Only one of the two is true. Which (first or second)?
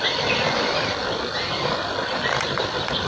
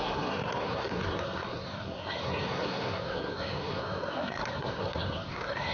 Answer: first